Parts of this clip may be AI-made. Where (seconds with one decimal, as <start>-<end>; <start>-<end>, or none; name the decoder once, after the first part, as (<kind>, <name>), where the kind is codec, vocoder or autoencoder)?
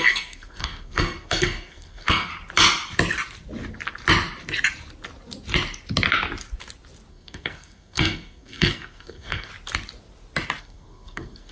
0.0-2.3 (codec, SNAC); 7.1-9.5; 10.6-11.5